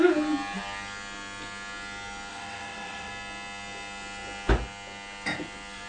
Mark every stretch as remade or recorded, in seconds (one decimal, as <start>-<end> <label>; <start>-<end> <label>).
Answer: 0.0-2.3 recorded; 2.3-3.1 remade; 3.1-5.9 recorded